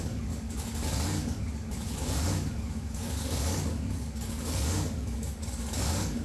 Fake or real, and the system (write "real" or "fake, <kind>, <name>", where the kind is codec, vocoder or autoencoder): fake, codec, DAC